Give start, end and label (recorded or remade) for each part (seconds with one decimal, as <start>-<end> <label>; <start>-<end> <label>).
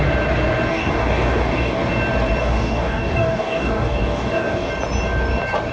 0.0-0.7 recorded; 0.7-1.8 remade; 1.8-2.4 recorded; 2.4-4.7 remade; 4.7-5.7 recorded